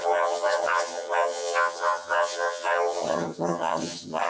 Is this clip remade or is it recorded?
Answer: remade